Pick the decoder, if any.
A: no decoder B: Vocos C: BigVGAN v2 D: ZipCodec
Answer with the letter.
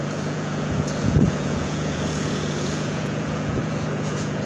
B